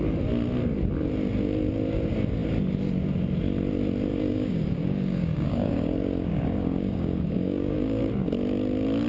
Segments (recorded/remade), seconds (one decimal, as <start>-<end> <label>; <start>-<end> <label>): 0.0-4.1 recorded; 4.1-8.0 remade; 8.0-9.1 recorded